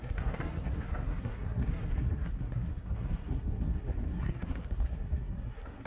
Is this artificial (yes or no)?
yes